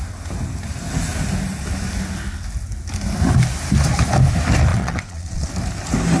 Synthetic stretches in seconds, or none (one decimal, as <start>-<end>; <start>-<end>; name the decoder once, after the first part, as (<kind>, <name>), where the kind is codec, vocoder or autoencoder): 4.7-5.5 (vocoder, Vocos)